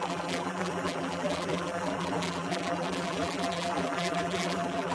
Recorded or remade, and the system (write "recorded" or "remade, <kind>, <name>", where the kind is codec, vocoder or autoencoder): remade, vocoder, BigVGAN v2